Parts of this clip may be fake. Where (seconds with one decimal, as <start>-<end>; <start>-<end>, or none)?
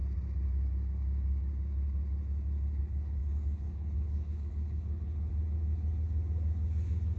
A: 2.8-5.3